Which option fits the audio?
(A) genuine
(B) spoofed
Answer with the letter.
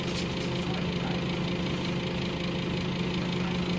A